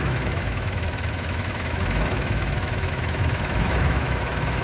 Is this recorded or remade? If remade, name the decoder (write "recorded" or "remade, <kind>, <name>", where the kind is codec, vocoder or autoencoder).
remade, autoencoder, DAC-VAE